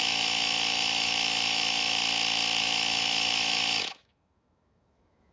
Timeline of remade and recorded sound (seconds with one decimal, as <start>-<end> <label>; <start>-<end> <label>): 0.0-2.0 remade; 2.0-2.6 recorded; 2.6-5.3 remade